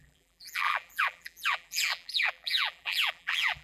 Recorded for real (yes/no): no